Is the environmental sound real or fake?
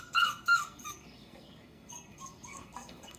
fake